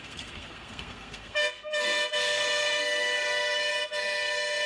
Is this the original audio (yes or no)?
no